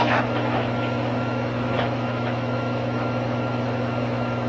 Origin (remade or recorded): remade